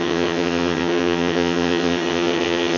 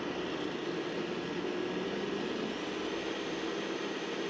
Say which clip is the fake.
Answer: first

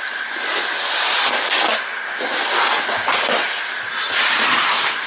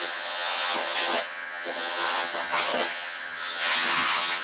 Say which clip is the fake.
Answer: second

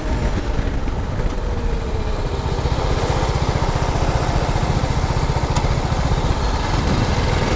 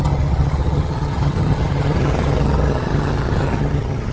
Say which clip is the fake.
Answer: second